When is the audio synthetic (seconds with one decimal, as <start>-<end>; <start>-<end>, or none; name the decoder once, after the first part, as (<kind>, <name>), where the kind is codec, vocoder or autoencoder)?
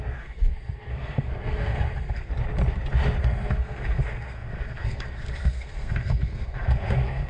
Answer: 0.0-2.3 (codec, SNAC); 3.2-7.3